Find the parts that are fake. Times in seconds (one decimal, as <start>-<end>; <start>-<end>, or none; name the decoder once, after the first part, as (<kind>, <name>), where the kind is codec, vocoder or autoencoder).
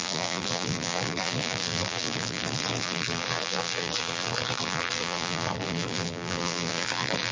0.0-7.3 (vocoder, BigVGAN v2)